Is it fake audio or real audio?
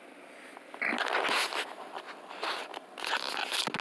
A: real